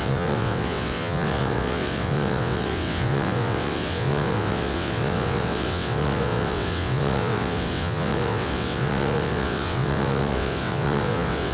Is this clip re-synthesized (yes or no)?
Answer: yes